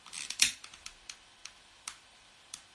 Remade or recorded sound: remade